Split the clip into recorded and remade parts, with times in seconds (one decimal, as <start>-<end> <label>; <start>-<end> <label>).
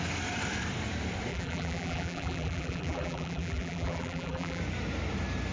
0.0-1.3 recorded; 1.3-4.6 remade; 4.6-5.5 recorded